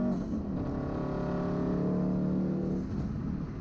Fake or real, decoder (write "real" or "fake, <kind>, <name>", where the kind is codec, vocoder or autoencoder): real